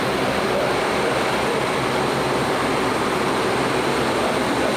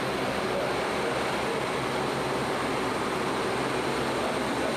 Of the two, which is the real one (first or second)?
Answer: second